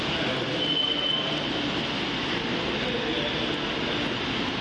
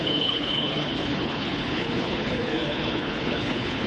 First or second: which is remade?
second